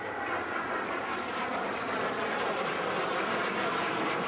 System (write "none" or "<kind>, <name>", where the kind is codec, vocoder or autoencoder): vocoder, BigVGAN v2